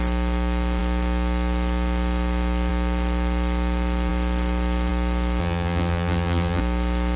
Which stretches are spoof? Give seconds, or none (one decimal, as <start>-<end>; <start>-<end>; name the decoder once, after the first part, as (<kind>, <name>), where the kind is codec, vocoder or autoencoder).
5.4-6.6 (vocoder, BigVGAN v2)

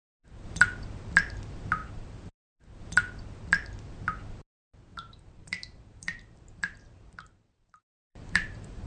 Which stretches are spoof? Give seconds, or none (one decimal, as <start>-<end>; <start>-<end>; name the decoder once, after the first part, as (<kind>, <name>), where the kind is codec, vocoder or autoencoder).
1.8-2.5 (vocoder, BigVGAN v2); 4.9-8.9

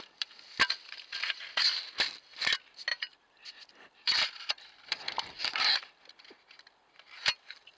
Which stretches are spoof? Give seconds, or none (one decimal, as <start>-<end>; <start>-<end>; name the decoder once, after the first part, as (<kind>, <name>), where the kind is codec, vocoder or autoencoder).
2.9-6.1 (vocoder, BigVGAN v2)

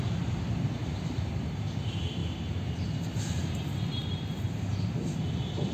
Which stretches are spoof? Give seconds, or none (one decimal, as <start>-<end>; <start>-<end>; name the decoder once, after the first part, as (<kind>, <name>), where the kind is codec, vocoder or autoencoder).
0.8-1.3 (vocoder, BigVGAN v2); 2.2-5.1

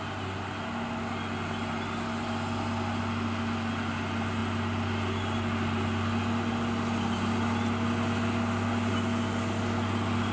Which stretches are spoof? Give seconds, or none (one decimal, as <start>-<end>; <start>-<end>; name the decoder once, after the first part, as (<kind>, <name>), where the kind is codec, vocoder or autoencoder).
none

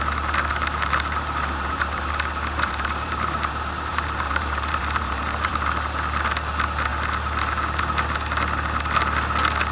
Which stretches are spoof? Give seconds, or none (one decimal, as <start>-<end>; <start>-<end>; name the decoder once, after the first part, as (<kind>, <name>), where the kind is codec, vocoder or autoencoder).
0.5-5.5 (vocoder, BigVGAN v2)

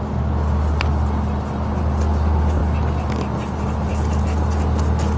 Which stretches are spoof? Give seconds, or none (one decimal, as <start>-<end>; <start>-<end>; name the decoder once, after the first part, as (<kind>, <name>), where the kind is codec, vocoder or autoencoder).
none